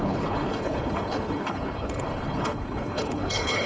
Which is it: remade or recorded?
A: remade